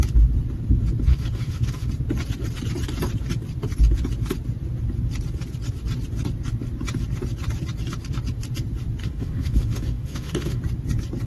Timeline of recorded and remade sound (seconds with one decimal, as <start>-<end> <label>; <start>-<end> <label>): 0.0-1.1 recorded; 1.1-1.9 remade; 1.9-9.0 recorded; 9.0-10.6 remade; 10.6-11.3 recorded